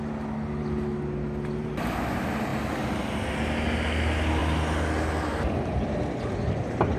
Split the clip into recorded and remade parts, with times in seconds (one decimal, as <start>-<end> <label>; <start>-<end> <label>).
0.0-7.0 recorded